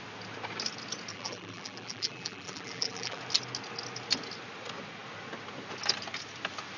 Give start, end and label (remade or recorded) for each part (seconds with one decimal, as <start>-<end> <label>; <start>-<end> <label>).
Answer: 0.0-1.1 recorded; 1.1-3.2 remade; 3.2-6.8 recorded